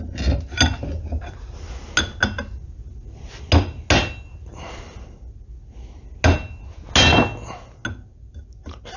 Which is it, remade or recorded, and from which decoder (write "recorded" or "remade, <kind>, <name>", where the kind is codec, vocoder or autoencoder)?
recorded